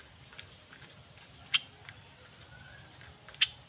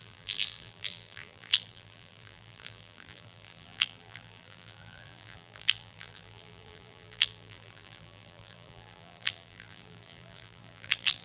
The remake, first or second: second